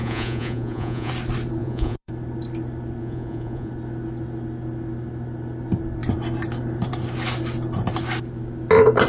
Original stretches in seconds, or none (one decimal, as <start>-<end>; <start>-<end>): 1.1-1.6; 2.1-3.0; 3.7-9.1